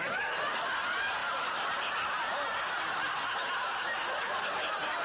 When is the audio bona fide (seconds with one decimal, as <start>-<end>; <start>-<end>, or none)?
0.0-1.2; 4.2-5.0